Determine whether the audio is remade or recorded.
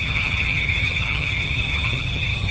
remade